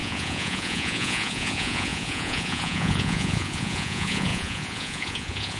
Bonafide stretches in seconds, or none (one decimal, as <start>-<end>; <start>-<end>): none